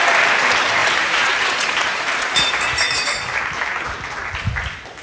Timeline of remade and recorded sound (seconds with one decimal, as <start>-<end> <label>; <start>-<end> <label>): 0.0-0.8 recorded; 0.8-3.4 remade; 3.4-5.0 recorded